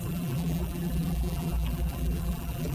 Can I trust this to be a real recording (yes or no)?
no